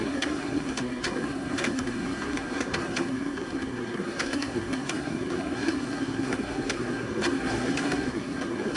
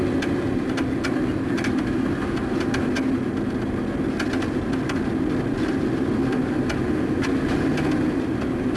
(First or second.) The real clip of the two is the second